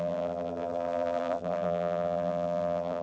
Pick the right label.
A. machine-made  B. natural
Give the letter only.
A